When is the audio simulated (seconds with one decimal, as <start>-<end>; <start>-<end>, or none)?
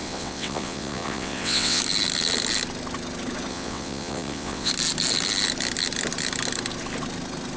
0.0-1.8; 3.5-4.7